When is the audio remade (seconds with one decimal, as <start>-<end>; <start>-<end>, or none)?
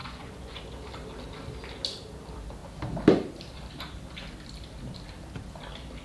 0.0-0.6